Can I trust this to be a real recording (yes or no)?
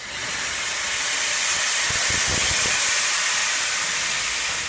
yes